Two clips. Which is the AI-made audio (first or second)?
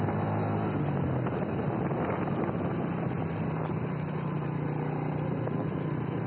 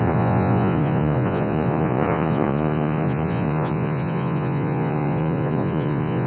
second